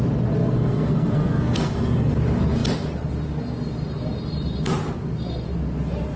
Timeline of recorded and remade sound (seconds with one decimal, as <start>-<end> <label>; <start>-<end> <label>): 0.0-0.4 recorded; 0.4-2.1 remade; 2.1-6.2 recorded